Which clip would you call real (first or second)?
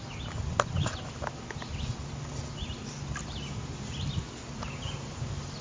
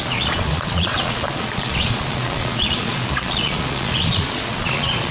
first